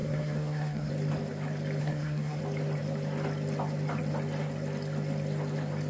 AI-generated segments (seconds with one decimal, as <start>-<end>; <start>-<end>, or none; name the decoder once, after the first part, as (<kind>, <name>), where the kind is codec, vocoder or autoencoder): 0.0-0.9 (codec, SNAC); 1.8-2.4